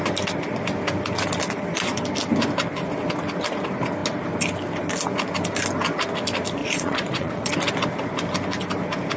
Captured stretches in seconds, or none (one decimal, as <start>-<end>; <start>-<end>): 0.0-6.6; 7.5-9.2